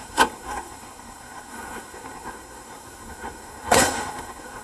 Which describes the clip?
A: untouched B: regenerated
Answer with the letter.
B